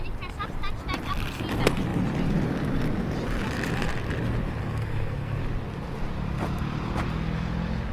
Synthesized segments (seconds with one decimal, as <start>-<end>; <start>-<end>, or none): 4.6-5.4